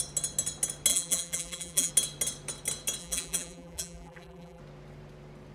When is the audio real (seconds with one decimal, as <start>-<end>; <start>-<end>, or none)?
0.0-0.9; 1.9-3.0; 4.6-5.5